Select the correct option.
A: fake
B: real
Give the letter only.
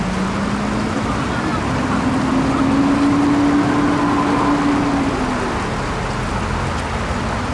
B